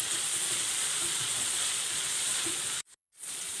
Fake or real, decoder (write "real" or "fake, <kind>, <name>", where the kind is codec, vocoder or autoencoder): fake, vocoder, Vocos